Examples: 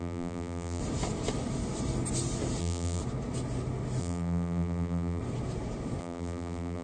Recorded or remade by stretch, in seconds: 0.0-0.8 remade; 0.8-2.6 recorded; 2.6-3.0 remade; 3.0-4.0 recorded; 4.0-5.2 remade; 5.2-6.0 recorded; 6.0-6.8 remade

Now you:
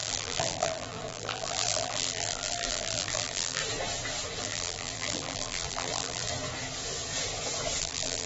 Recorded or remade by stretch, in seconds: 0.0-3.6 remade; 3.6-4.4 recorded; 4.4-6.3 remade; 6.3-7.8 recorded; 7.8-8.3 remade

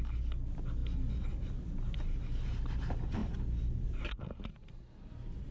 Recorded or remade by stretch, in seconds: 0.0-5.5 recorded

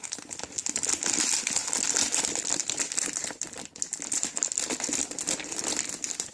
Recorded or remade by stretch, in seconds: 0.0-0.6 recorded; 0.6-1.2 remade; 1.2-1.6 recorded; 1.6-5.4 remade; 5.4-6.3 recorded

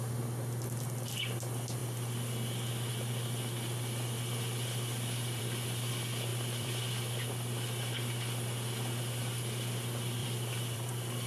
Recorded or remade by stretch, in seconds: 0.0-6.3 recorded; 6.3-6.9 remade; 6.9-10.2 recorded; 10.2-10.9 remade; 10.9-11.3 recorded